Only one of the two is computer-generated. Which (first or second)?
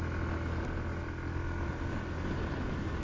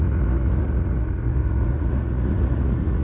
second